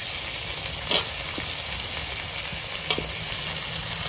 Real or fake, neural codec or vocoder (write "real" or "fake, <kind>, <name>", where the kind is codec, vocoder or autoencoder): real